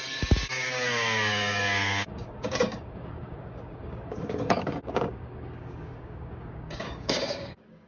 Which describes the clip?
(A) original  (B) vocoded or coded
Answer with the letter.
B